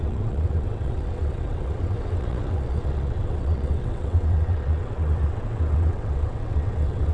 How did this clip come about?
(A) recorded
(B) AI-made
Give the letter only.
B